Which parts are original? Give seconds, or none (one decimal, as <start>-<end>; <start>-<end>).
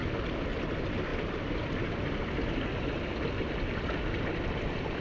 0.0-5.0